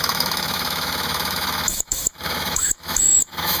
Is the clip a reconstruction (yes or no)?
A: yes